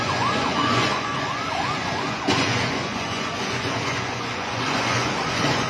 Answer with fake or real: fake